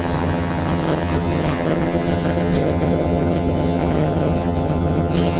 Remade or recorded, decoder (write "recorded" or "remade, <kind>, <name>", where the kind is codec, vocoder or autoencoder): remade, vocoder, HiFi-GAN